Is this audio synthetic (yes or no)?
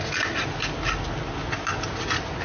no